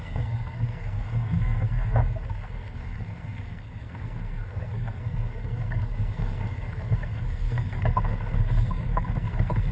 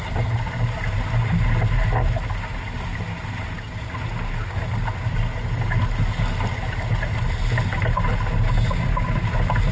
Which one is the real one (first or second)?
second